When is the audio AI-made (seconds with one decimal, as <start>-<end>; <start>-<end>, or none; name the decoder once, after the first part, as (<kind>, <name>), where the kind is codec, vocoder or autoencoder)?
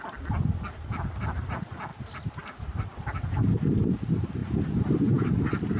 1.9-3.2 (vocoder, BigVGAN v2)